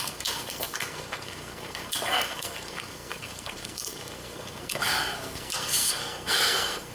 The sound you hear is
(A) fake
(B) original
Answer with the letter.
A